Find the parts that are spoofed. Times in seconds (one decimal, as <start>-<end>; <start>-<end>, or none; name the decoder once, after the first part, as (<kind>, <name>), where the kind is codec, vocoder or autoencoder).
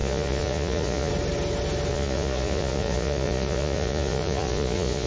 0.0-1.1 (vocoder, Vocos); 1.9-5.1